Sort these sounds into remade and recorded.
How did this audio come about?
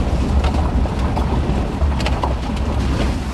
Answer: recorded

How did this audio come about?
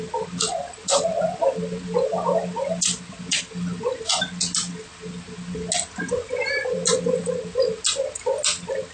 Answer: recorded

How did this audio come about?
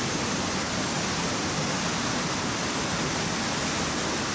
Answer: recorded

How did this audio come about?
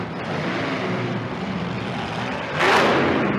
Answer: recorded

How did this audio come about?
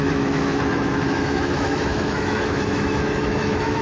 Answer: remade